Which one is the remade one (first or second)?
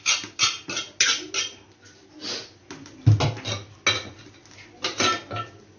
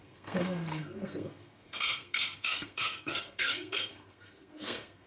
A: second